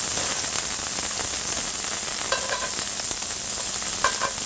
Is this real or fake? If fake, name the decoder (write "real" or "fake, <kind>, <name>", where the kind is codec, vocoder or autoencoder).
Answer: real